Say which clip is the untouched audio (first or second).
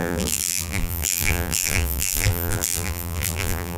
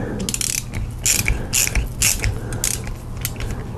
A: second